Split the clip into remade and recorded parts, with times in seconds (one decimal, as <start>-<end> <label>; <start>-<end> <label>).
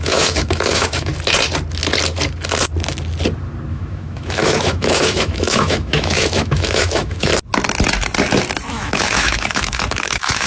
0.0-1.1 remade; 1.1-3.7 recorded; 3.7-7.3 remade; 7.3-8.7 recorded; 8.7-10.5 remade